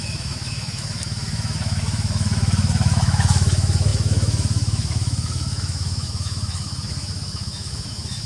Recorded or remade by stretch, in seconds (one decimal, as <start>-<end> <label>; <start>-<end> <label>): 0.0-8.3 remade